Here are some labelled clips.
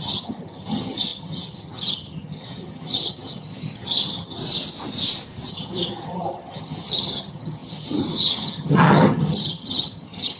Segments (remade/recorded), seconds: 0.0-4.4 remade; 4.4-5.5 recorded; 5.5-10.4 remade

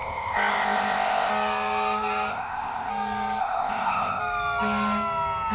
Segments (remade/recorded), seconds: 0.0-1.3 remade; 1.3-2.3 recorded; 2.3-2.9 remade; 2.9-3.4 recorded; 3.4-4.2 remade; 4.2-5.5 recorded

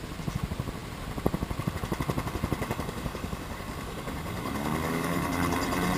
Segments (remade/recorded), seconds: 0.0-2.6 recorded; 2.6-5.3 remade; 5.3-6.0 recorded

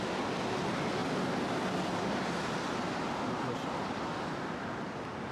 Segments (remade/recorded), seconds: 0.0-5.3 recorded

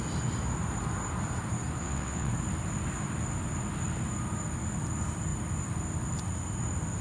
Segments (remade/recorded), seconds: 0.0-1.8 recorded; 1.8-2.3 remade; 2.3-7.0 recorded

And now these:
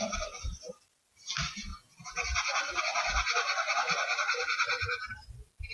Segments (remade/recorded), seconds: 0.0-5.7 recorded